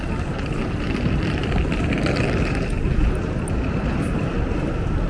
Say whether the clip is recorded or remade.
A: recorded